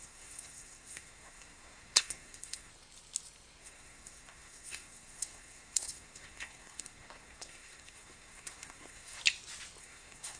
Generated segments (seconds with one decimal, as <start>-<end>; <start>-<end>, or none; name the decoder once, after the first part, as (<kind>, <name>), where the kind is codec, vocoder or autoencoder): 0.0-2.7 (codec, SNAC); 3.6-9.2; 9.8-10.4